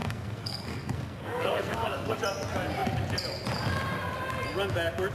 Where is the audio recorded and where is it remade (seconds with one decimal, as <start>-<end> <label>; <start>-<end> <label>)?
0.0-2.2 remade; 2.2-5.1 recorded